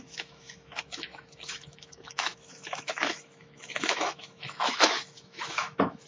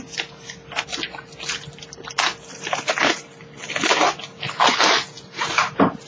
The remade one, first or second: first